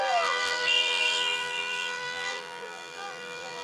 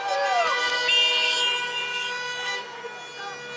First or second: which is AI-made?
first